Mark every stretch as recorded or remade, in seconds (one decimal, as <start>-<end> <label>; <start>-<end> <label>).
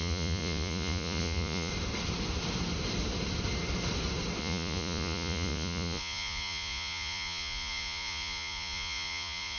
0.0-1.7 remade; 1.7-4.4 recorded; 4.4-9.6 remade